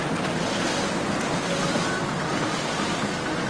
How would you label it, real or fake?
real